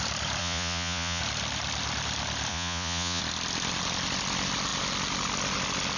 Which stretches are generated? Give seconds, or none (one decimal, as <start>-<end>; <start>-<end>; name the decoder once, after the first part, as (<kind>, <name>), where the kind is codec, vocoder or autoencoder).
0.4-1.2 (vocoder, Vocos); 2.5-3.2